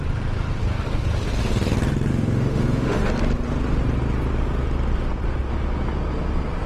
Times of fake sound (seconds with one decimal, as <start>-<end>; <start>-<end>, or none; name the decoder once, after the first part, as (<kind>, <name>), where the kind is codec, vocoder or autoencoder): 2.1-3.1 (autoencoder, DAC-VAE)